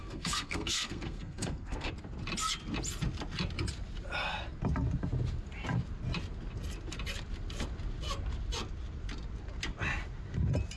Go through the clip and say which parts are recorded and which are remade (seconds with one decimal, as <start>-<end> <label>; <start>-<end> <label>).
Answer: 0.0-1.9 remade; 1.9-10.8 recorded